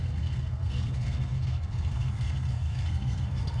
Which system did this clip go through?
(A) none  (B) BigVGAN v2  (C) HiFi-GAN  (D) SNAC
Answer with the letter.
D